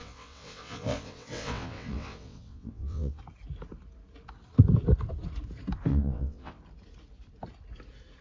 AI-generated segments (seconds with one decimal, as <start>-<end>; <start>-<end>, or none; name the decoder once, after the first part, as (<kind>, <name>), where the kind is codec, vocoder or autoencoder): 0.0-3.2 (vocoder, WaveNeXt); 5.9-6.6